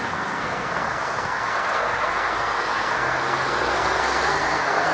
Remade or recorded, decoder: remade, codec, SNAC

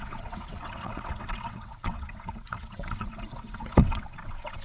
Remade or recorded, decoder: remade, vocoder, WaveNeXt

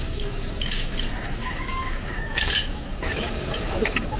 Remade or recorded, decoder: remade, codec, DAC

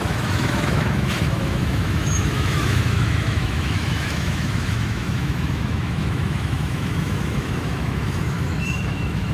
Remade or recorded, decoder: remade, autoencoder, DAC-VAE